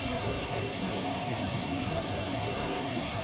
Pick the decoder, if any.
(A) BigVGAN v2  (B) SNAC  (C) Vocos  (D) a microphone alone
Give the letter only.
B